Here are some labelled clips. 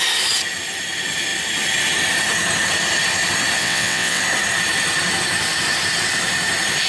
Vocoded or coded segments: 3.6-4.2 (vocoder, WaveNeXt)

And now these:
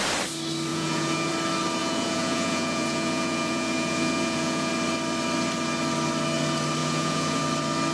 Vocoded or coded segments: 0.7-1.3 (vocoder, Vocos); 1.8-4.7; 6.8-7.4

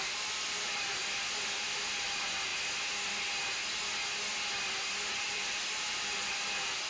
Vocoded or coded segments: 0.0-2.5 (vocoder, BigVGAN v2); 5.1-6.9

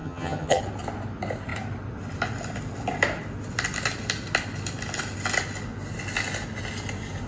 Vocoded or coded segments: 0.0-0.6 (vocoder, HiFi-GAN)

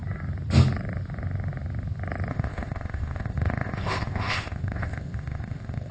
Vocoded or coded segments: 2.3-5.9 (codec, ZipCodec)

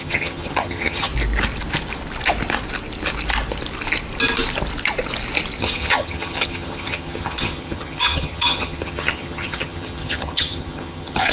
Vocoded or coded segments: 0.0-1.1 (vocoder, HiFi-GAN); 5.6-11.3